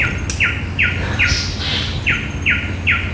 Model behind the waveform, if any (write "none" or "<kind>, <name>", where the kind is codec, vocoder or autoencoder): none